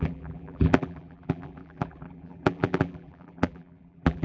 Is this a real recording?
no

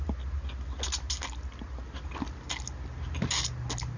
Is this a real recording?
yes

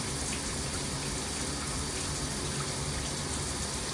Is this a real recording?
yes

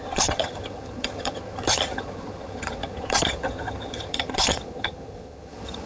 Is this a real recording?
no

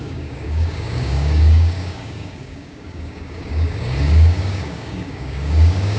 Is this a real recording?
no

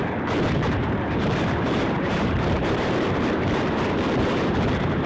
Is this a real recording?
no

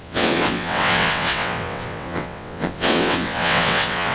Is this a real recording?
no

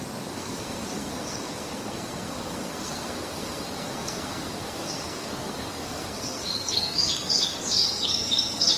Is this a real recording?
no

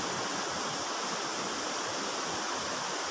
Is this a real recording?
yes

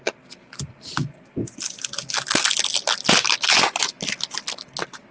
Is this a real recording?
yes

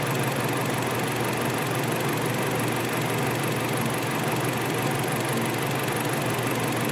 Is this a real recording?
yes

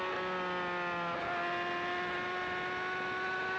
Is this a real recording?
yes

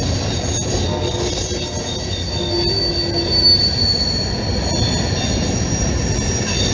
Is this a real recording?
yes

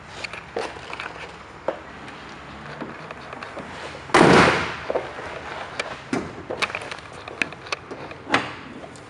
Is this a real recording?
yes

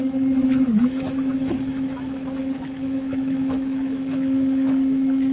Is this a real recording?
no